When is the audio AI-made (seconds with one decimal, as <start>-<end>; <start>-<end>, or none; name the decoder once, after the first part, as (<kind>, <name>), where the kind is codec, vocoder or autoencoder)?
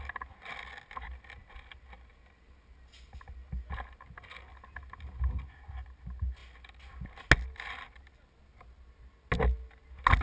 none